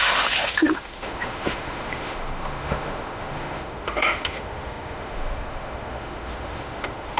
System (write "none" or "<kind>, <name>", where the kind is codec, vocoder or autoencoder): autoencoder, DAC-VAE